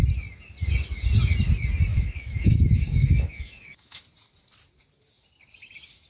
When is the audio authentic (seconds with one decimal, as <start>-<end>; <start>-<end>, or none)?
0.0-1.9; 4.0-6.1